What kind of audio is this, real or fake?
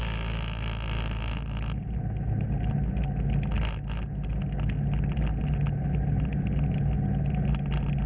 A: real